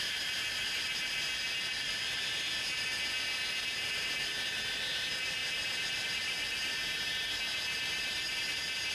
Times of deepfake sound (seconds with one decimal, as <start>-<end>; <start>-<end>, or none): none